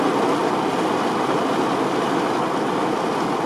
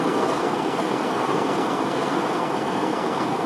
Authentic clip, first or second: first